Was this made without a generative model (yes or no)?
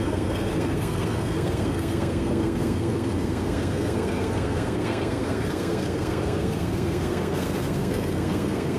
no